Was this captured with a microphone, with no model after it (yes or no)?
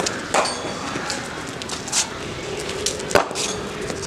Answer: yes